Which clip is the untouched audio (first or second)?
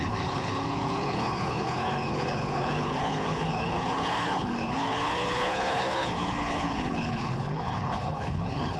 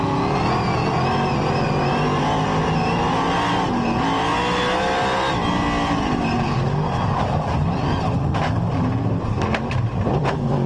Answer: second